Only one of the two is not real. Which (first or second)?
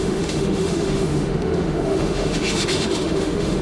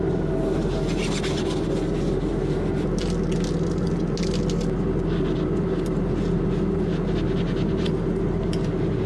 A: first